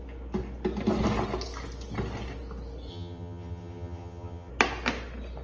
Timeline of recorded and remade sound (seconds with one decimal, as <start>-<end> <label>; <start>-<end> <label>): 0.0-2.9 recorded; 2.9-4.5 remade; 4.5-5.4 recorded